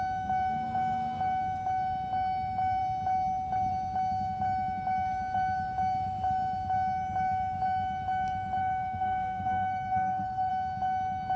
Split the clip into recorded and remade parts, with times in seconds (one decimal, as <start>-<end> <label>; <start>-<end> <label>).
0.0-8.6 recorded; 8.6-10.5 remade; 10.5-11.4 recorded